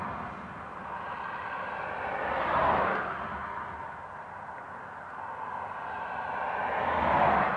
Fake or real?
real